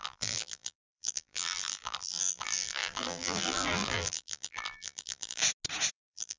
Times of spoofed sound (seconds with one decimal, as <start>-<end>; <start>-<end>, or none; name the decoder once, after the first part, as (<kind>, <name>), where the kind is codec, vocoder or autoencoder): 0.0-5.4 (vocoder, BigVGAN v2); 5.9-6.4